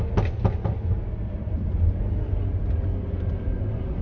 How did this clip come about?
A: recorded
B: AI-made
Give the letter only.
A